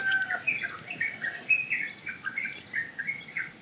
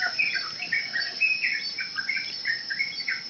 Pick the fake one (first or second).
second